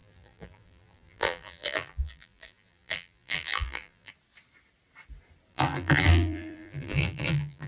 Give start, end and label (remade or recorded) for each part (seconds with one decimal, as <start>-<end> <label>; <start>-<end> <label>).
0.0-4.1 remade; 4.1-5.5 recorded; 5.5-7.7 remade